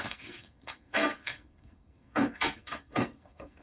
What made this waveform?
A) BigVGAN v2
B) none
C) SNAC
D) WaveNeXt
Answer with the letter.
C